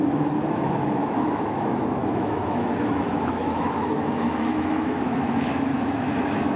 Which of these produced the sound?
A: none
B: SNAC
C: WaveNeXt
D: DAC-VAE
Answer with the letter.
D